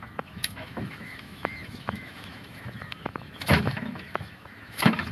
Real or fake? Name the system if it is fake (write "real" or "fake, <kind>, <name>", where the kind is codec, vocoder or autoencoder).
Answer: fake, autoencoder, DAC-VAE